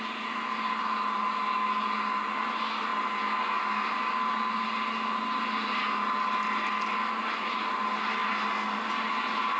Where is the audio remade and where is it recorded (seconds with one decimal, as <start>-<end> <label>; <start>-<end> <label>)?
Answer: 0.0-9.6 recorded